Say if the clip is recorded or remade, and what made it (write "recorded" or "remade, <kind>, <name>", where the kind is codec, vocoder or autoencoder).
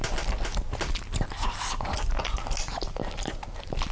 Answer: recorded